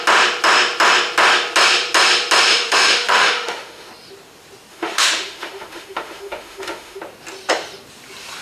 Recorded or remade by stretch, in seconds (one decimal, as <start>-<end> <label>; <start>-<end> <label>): 0.0-2.5 recorded; 2.5-3.9 remade; 3.9-4.7 recorded; 4.7-7.0 remade; 7.0-8.4 recorded